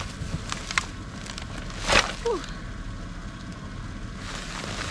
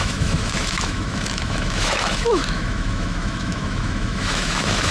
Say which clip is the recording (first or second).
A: first